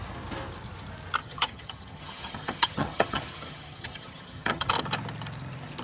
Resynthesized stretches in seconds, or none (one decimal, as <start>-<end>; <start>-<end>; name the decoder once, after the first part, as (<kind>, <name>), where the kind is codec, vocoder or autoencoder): 1.2-4.7 (vocoder, HiFi-GAN)